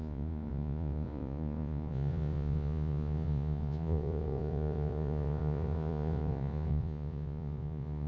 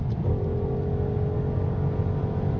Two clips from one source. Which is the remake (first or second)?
first